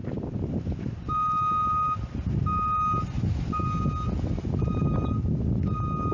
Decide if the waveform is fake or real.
real